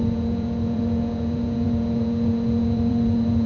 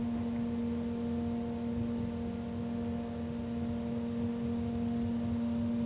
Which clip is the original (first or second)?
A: second